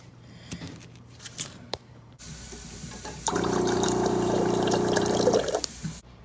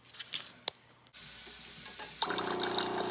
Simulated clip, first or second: first